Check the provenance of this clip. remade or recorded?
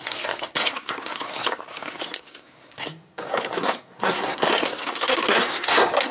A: remade